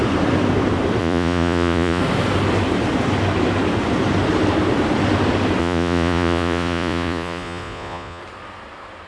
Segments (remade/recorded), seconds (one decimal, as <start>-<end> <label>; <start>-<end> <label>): 0.0-1.0 recorded; 1.0-2.0 remade; 2.0-5.6 recorded; 5.6-8.2 remade; 8.2-9.1 recorded